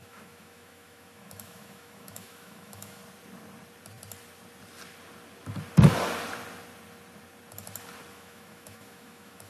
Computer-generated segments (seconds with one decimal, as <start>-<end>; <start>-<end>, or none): 0.0-3.0; 8.1-9.5